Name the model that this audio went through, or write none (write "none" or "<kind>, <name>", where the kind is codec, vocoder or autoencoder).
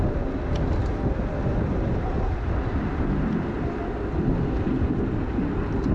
none